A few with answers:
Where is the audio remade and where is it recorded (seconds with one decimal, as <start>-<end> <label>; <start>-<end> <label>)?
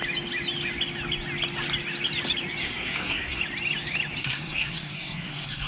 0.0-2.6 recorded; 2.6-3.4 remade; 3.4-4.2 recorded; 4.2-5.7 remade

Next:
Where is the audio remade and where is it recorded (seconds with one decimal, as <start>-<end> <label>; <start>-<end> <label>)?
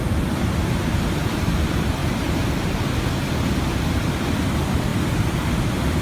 0.0-6.0 recorded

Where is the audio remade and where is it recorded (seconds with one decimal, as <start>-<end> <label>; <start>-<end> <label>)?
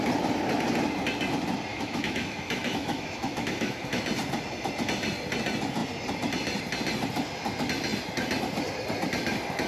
0.0-1.7 recorded; 1.7-4.0 remade; 4.0-9.7 recorded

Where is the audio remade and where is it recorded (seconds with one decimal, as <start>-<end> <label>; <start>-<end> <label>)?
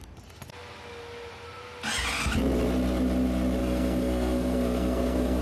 0.0-3.6 recorded; 3.6-5.4 remade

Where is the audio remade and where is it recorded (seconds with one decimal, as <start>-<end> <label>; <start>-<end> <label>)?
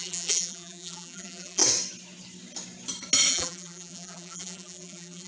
0.0-1.6 remade; 1.6-3.3 recorded; 3.3-5.3 remade